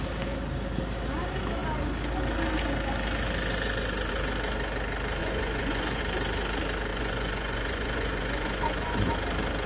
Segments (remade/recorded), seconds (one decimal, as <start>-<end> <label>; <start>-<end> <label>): 0.0-5.2 recorded; 5.2-6.0 remade; 6.0-6.9 recorded; 6.9-9.1 remade; 9.1-9.7 recorded